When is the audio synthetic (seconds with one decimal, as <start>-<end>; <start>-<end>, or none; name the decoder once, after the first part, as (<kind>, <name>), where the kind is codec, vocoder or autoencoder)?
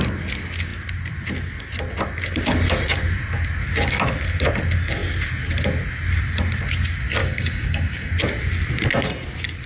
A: 7.2-8.1 (codec, DAC)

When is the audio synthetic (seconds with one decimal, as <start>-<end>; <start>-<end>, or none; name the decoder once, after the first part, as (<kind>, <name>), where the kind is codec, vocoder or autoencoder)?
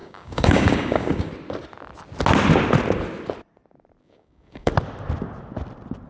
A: 0.0-1.3 (codec, DAC); 4.0-4.7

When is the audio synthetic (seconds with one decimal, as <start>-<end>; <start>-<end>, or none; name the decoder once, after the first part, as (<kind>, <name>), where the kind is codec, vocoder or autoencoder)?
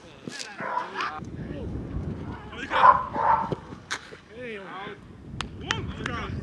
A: 0.8-2.1 (codec, DAC); 3.4-5.0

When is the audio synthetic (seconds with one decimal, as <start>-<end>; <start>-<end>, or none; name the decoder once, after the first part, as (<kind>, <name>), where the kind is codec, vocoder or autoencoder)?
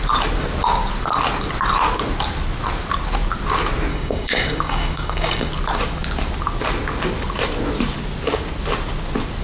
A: 3.9-5.5 (codec, DAC)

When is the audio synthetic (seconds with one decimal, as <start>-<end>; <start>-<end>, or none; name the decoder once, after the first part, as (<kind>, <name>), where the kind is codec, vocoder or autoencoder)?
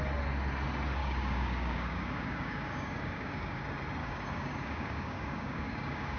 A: 1.0-3.6 (codec, DAC); 4.0-6.2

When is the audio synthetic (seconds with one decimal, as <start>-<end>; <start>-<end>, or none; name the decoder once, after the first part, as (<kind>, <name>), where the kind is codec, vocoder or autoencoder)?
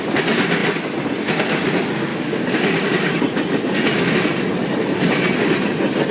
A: 2.1-3.2 (codec, DAC)